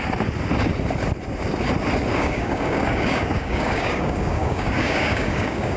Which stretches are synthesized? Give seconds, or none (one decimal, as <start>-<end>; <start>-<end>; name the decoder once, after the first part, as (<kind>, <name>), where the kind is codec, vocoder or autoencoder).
2.1-5.8 (codec, DAC)